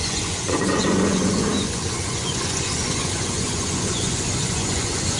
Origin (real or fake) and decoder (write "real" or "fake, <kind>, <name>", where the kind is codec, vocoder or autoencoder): fake, vocoder, Vocos